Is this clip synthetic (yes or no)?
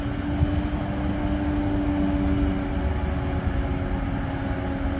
no